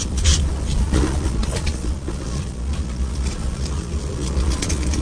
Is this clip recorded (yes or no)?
no